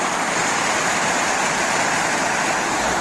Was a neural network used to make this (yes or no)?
no